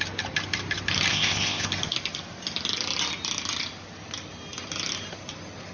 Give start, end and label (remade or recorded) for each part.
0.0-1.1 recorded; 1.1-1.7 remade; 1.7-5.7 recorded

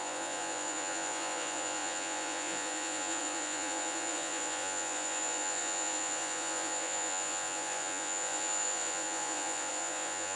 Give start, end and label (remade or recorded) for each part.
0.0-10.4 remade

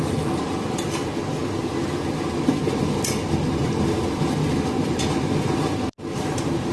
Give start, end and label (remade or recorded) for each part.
0.0-6.7 recorded

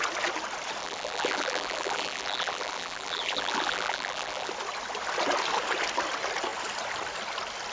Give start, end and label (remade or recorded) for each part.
0.0-0.8 recorded; 0.8-4.5 remade; 4.5-7.7 recorded